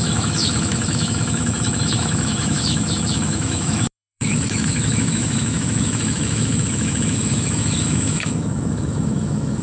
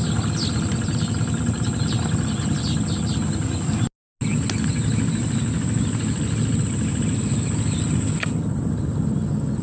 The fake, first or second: first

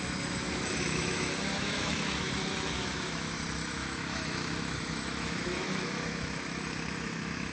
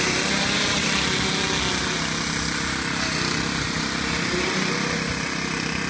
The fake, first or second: first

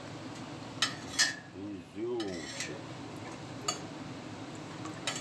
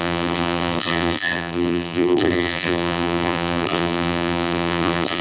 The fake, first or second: second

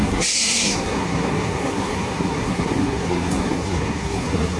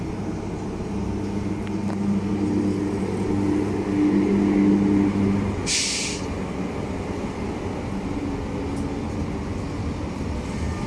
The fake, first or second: first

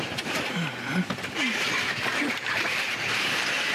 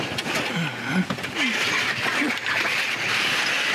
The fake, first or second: first